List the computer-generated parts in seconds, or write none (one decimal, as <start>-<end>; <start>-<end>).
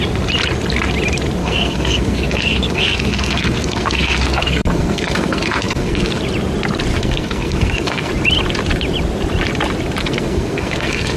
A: 1.4-6.2; 6.9-8.1; 10.0-11.2